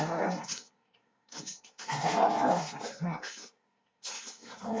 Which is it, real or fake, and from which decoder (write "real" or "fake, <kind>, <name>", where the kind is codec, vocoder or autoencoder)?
fake, codec, SNAC